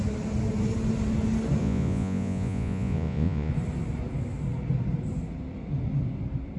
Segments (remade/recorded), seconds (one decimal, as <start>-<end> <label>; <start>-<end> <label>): 0.0-1.6 recorded; 1.6-3.5 remade; 3.5-6.6 recorded